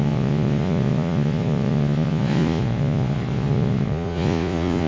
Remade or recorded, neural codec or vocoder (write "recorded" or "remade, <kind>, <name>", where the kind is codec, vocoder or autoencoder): remade, vocoder, Vocos